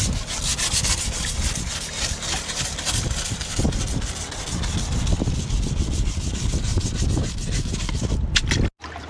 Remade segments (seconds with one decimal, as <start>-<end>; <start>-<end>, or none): none